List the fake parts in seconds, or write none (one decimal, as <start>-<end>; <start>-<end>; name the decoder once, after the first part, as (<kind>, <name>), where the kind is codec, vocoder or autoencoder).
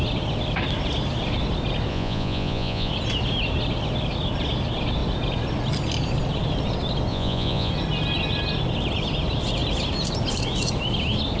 1.9-2.9 (vocoder, Vocos); 7.1-7.7